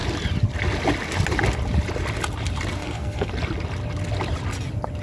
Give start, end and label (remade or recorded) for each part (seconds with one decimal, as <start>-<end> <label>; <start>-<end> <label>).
0.0-2.8 recorded; 2.8-3.3 remade; 3.3-5.0 recorded